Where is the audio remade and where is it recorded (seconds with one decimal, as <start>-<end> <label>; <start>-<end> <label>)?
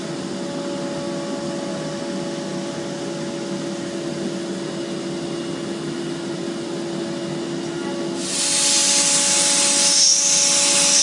0.0-11.0 recorded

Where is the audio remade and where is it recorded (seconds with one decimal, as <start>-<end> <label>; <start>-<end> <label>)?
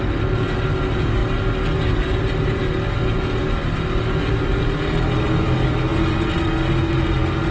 0.0-7.5 recorded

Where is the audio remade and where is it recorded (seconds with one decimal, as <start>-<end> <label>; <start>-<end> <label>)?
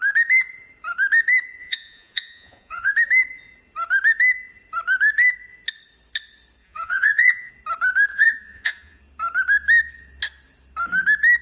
0.0-1.6 recorded; 1.6-2.9 remade; 2.9-6.6 recorded; 6.6-7.5 remade; 7.5-8.1 recorded; 8.1-9.0 remade; 9.0-11.4 recorded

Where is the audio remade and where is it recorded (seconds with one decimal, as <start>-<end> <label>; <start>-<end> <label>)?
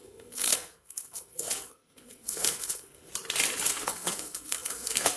0.0-3.1 remade; 3.1-3.7 recorded; 3.7-5.2 remade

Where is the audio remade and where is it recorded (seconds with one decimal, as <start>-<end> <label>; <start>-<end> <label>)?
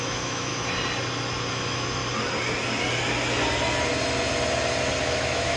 0.0-0.5 remade; 0.5-1.5 recorded; 1.5-2.0 remade; 2.0-5.0 recorded; 5.0-5.6 remade